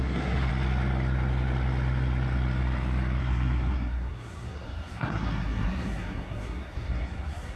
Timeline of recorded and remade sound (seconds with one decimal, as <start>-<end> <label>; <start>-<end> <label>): 0.0-0.5 remade; 0.5-3.2 recorded; 3.2-7.6 remade